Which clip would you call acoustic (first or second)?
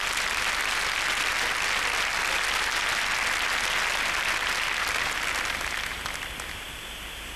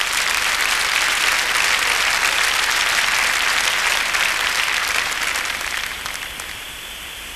first